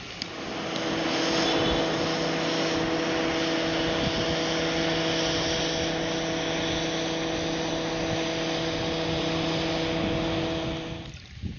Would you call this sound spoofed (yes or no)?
no